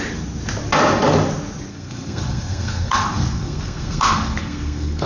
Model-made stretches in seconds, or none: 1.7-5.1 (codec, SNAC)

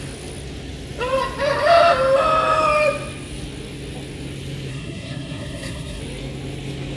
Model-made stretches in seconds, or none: 4.7-6.0 (codec, SNAC)

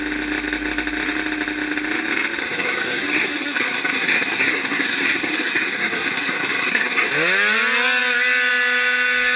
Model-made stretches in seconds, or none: 2.4-7.1 (codec, SNAC)

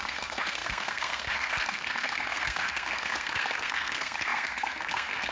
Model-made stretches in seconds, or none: 0.0-5.3 (codec, SNAC)

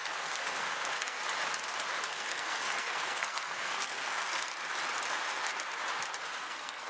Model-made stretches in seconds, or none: 0.0-1.2 (codec, SNAC); 2.1-4.5; 5.1-5.5; 6.4-6.9